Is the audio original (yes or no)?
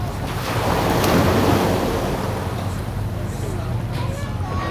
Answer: yes